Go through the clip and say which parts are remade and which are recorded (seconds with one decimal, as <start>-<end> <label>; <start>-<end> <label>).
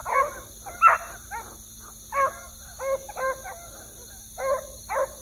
0.0-5.2 recorded